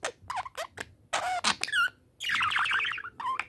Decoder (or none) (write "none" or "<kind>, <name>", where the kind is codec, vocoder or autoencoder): none